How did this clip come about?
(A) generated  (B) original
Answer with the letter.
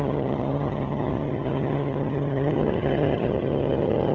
A